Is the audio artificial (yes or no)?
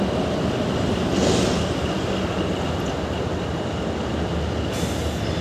no